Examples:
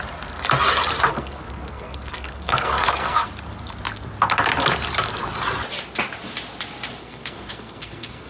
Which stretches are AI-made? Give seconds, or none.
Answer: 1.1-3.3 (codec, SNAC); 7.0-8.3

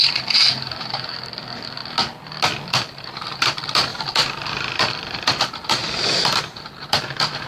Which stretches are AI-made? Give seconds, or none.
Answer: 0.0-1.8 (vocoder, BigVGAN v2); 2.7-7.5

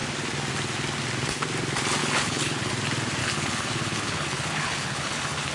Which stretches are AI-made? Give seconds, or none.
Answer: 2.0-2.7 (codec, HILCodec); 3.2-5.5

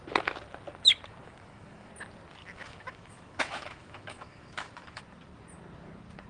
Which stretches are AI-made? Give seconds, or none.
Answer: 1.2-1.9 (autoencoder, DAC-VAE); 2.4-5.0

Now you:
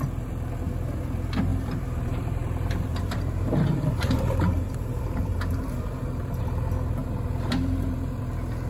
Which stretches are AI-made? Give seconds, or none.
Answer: 1.5-6.4 (vocoder, BigVGAN v2); 7.0-8.2